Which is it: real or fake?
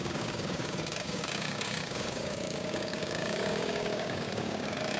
fake